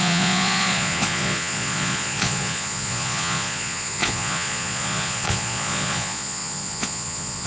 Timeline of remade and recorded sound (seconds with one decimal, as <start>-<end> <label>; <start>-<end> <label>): 0.0-7.5 remade